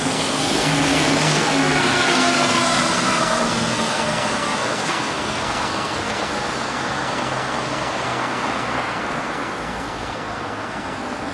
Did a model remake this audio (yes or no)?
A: yes